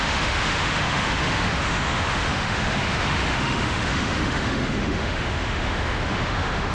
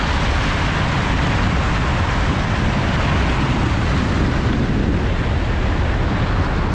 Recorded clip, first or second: second